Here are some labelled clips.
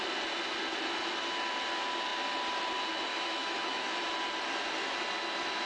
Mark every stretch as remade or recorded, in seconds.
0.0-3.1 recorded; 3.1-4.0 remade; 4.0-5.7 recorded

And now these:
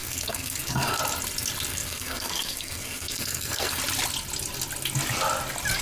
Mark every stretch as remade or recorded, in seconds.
0.0-1.0 remade; 1.0-1.7 recorded; 1.7-3.8 remade; 3.8-5.8 recorded

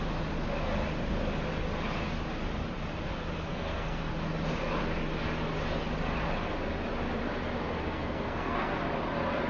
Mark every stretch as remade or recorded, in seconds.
0.0-3.5 recorded; 3.5-4.0 remade; 4.0-7.9 recorded; 7.9-8.8 remade; 8.8-9.5 recorded